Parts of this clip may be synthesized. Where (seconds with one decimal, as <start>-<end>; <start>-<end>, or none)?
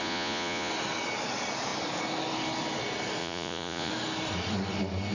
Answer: 0.0-0.7; 3.2-3.9